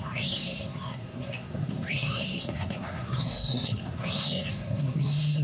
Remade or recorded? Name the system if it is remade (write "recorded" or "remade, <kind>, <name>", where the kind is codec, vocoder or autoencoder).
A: remade, codec, SNAC